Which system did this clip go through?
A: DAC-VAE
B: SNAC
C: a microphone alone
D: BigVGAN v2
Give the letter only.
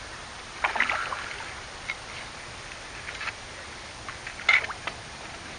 C